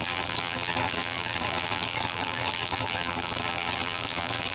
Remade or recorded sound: remade